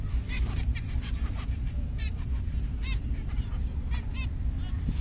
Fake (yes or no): no